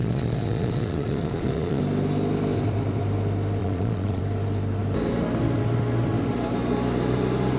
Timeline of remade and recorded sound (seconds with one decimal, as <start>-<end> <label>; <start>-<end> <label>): 0.0-1.8 remade; 1.8-3.6 recorded; 3.6-4.2 remade; 4.2-7.6 recorded